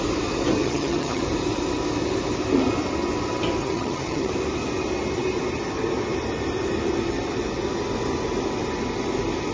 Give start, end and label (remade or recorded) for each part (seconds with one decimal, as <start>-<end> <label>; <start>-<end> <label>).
0.0-0.6 recorded; 0.6-1.2 remade; 1.2-3.6 recorded; 3.6-4.3 remade; 4.3-9.5 recorded